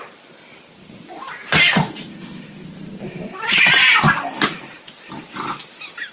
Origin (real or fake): real